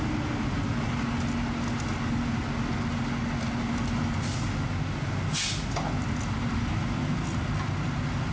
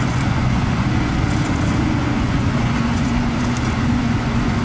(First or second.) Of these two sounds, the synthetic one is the second